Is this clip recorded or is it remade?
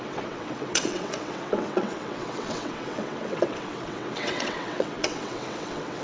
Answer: remade